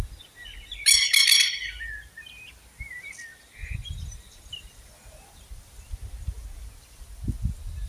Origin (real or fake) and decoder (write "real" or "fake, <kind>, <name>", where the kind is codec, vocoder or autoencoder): real